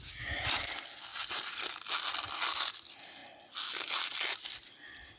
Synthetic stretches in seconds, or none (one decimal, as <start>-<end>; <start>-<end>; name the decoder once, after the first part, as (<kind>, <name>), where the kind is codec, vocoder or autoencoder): 1.1-1.9 (vocoder, BigVGAN v2)